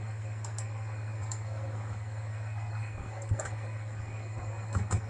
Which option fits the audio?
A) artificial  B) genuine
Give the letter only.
A